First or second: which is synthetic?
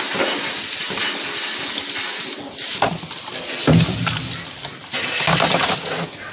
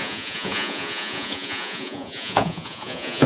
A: second